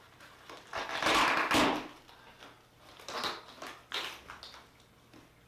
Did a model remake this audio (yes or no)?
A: no